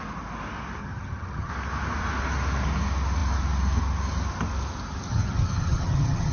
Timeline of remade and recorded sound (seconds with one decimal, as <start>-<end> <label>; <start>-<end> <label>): 0.0-0.8 recorded; 0.8-1.5 remade; 1.5-5.1 recorded; 5.1-6.3 remade